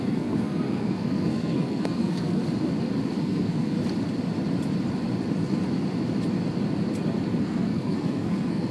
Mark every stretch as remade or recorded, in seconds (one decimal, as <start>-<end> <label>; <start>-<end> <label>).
0.0-2.4 remade; 2.4-3.2 recorded; 3.2-3.8 remade; 3.8-7.4 recorded; 7.4-8.7 remade